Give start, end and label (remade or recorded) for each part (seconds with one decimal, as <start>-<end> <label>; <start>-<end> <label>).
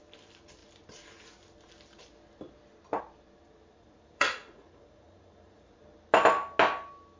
0.0-3.7 recorded; 3.7-5.8 remade; 5.8-7.2 recorded